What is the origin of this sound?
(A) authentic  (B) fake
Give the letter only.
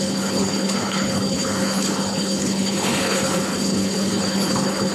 B